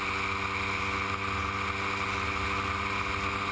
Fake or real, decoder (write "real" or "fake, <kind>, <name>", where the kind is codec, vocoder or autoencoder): real